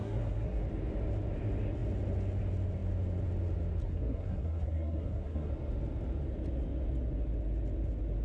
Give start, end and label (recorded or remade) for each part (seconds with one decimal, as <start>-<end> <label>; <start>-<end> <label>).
0.0-0.6 remade; 0.6-3.8 recorded; 3.8-5.5 remade; 5.5-8.2 recorded